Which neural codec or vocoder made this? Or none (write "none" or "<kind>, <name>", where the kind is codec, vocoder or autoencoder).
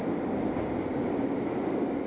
none